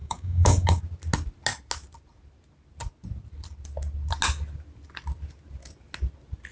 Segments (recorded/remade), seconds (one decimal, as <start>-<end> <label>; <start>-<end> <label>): 0.0-0.8 remade; 0.8-6.5 recorded